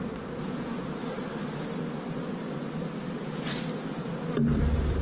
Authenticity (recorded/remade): recorded